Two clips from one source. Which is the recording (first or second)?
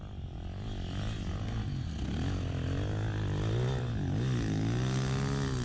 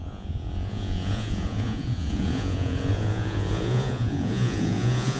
first